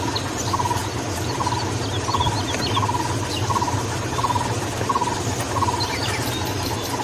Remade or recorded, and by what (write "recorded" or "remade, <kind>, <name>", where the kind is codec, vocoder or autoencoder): recorded